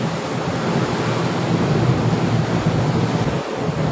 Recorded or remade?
recorded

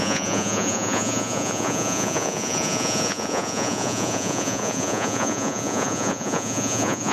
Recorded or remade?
remade